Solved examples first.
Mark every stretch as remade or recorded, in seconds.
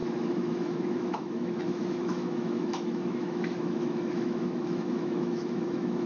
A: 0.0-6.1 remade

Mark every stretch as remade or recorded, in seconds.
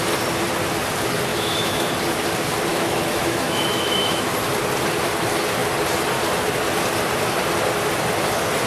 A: 0.0-1.3 recorded; 1.3-1.9 remade; 1.9-2.7 recorded; 2.7-4.3 remade; 4.3-8.7 recorded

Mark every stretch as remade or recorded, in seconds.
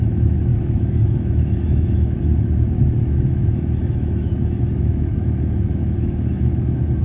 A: 0.0-7.0 remade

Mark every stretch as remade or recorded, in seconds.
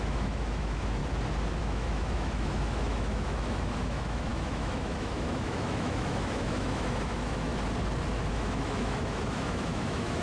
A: 0.0-1.0 remade; 1.0-1.6 recorded; 1.6-7.5 remade; 7.5-8.3 recorded; 8.3-10.2 remade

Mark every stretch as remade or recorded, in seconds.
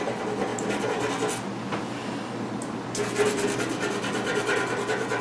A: 0.0-5.2 recorded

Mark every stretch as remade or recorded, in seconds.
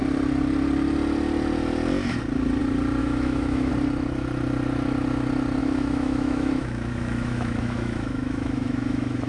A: 0.0-3.0 recorded; 3.0-3.7 remade; 3.7-5.6 recorded; 5.6-9.3 remade